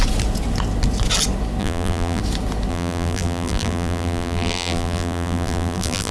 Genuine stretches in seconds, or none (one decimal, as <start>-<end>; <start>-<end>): 0.0-1.6; 2.2-2.7